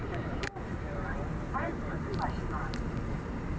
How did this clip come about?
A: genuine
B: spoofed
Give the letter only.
B